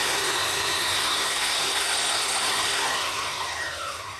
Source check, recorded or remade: remade